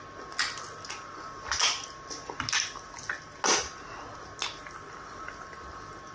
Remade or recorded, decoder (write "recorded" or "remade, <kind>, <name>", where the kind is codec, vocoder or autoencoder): recorded